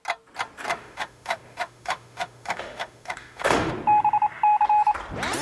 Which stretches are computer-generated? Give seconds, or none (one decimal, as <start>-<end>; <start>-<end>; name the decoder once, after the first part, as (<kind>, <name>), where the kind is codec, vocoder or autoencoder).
0.7-3.7 (autoencoder, DAC-VAE)